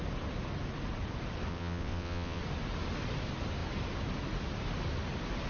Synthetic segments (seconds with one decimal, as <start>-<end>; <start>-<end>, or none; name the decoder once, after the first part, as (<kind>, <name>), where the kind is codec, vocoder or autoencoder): 1.5-2.4 (vocoder, WaveNeXt)